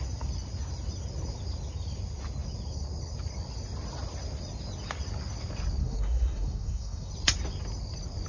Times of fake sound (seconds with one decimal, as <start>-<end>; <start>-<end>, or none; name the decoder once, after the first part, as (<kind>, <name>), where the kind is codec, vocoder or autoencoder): 5.8-7.1 (codec, SNAC)